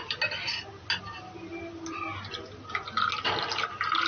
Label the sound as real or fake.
real